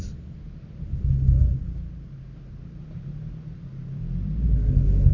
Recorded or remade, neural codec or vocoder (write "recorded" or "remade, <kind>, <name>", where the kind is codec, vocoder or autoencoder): recorded